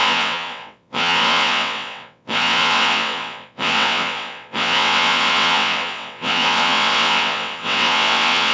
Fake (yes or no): yes